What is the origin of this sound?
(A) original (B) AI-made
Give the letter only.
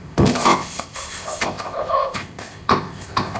B